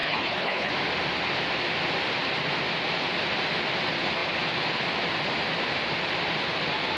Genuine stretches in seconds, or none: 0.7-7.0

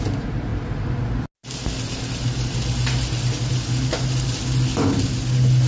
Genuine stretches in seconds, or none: 0.0-5.7

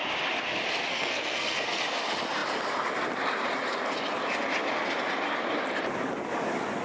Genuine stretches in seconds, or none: 0.0-0.9; 1.8-6.8

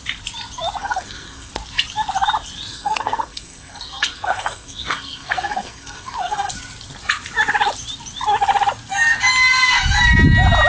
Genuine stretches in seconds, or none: 0.0-0.8; 1.5-2.7; 6.5-10.7

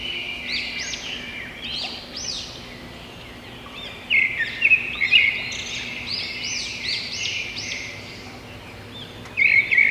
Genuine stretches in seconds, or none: 0.0-1.3; 2.0-6.7; 8.4-9.9